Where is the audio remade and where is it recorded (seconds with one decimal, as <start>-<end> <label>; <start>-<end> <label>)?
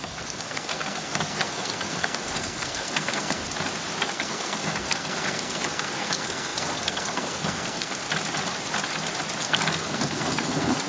0.0-3.4 remade; 3.4-4.0 recorded; 4.0-8.0 remade; 8.0-9.4 recorded; 9.4-10.9 remade